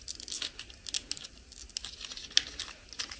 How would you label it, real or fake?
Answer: real